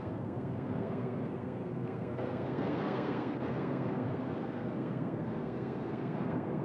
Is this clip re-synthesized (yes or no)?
yes